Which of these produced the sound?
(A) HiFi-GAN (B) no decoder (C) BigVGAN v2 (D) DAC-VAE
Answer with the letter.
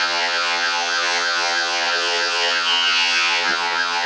A